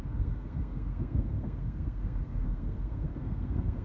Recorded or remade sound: remade